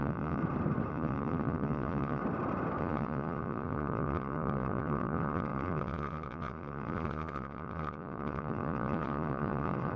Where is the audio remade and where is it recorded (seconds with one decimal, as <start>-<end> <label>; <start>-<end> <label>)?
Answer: 0.0-0.4 remade; 0.4-0.9 recorded; 0.9-2.2 remade; 2.2-2.8 recorded; 2.8-10.0 remade